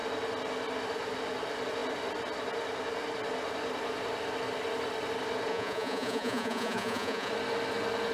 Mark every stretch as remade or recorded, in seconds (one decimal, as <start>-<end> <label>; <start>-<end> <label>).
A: 0.0-5.5 recorded; 5.5-7.3 remade; 7.3-8.1 recorded